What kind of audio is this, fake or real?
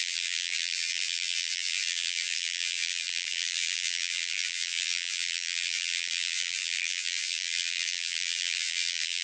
fake